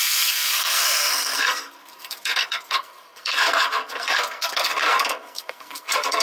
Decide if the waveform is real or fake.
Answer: fake